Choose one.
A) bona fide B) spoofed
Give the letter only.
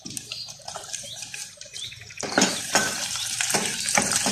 B